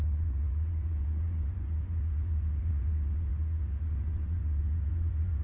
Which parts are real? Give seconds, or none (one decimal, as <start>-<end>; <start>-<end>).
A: none